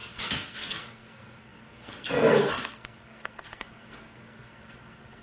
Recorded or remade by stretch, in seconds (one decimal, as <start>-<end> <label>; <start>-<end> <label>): 0.0-5.2 remade